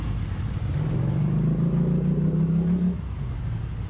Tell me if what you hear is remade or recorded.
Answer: recorded